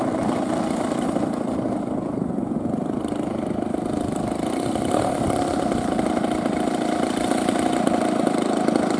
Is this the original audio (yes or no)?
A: yes